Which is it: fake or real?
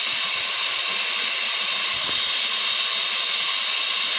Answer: real